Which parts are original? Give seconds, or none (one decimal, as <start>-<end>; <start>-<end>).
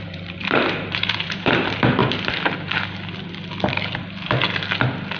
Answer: 2.0-5.2